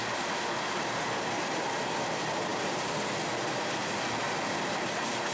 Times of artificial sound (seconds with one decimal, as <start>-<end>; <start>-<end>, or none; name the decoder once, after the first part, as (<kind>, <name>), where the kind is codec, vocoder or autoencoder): none